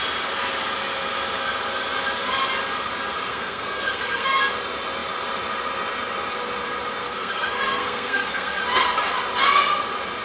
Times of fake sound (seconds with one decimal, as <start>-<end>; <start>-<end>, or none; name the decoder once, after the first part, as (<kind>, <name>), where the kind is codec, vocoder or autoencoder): 3.3-4.4 (codec, SNAC); 7.0-8.6